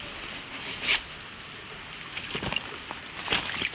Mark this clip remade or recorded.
recorded